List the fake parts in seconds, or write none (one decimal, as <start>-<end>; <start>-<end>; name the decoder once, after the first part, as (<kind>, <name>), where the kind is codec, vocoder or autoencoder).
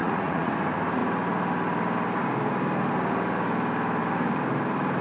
0.0-0.5 (vocoder, Vocos)